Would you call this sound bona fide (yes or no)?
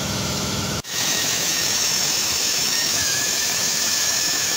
no